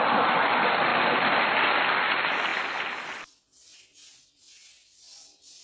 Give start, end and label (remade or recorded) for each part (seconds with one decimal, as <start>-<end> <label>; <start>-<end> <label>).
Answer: 0.0-5.6 recorded